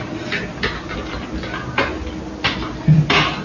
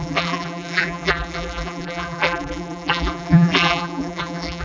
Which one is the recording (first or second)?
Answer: first